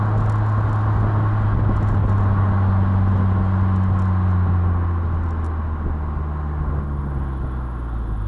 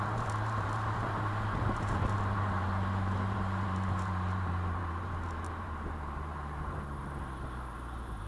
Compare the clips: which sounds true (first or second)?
first